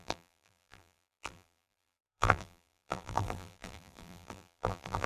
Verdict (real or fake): fake